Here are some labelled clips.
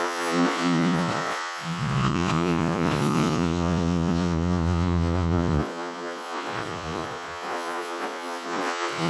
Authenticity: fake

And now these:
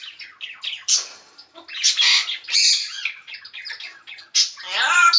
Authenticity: real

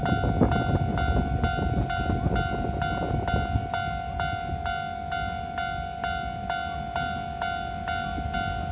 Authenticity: real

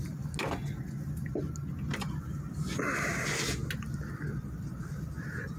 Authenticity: real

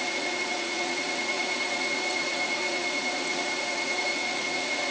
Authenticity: fake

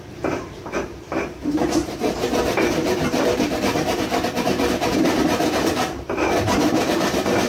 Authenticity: fake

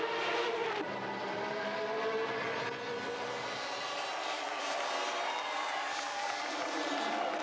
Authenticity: fake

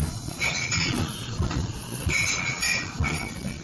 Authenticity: fake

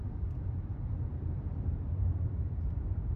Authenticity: fake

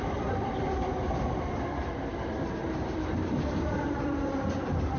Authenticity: fake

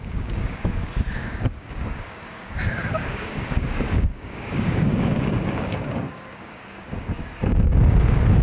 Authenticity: fake